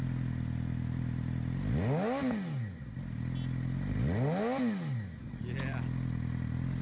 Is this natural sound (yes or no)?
yes